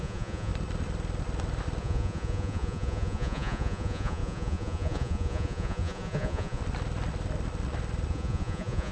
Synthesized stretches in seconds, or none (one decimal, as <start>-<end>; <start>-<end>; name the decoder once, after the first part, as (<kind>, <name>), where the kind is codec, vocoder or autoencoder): 0.0-0.5 (vocoder, Vocos); 1.8-6.6; 8.1-8.9